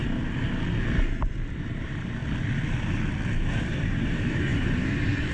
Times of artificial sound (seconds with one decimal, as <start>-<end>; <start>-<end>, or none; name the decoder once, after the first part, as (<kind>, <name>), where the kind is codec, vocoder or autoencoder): 1.7-2.2 (vocoder, BigVGAN v2); 3.3-5.3